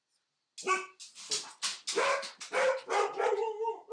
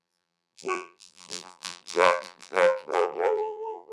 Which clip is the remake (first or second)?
second